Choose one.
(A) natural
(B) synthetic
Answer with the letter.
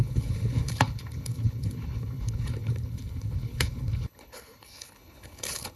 B